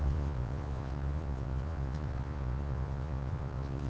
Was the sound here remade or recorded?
remade